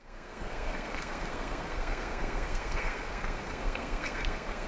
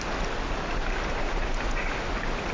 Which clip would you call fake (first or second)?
first